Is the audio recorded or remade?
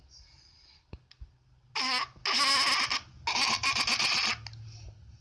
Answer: recorded